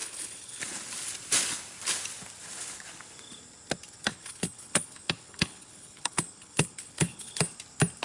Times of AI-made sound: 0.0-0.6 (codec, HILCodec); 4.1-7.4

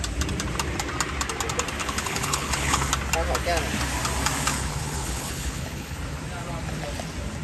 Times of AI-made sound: 1.8-2.9 (codec, HILCodec); 4.5-6.0

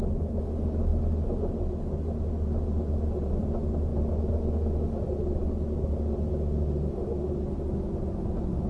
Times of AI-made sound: none